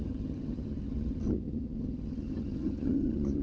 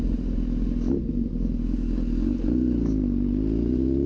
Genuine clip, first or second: second